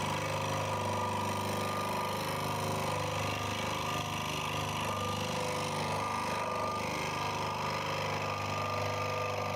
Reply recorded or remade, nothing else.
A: recorded